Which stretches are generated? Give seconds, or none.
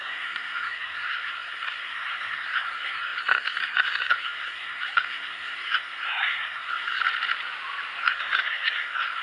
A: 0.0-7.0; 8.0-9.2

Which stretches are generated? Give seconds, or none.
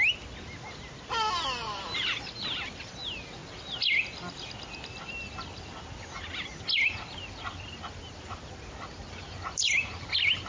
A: none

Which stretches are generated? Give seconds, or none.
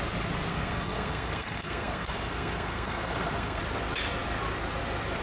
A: 0.5-3.6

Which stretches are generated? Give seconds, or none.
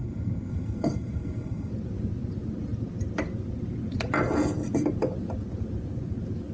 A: 0.0-1.7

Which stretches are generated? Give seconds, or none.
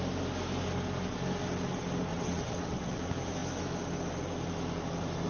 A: 2.1-3.0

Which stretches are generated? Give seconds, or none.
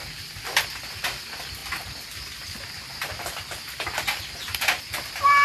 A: 0.0-0.6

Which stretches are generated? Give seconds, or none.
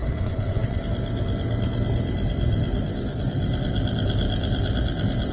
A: 0.0-0.8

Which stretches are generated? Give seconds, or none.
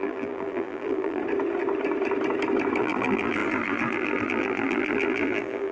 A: 0.0-1.2; 2.8-5.7